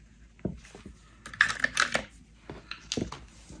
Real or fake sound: real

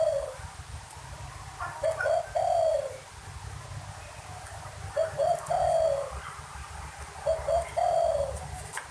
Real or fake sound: real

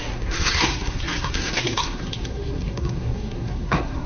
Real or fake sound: fake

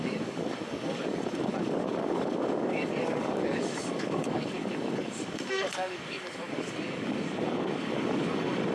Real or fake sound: fake